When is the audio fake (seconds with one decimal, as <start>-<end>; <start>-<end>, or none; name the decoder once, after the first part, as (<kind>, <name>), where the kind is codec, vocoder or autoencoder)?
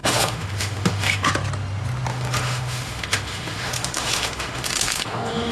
0.0-1.3 (autoencoder, DAC-VAE); 2.1-5.5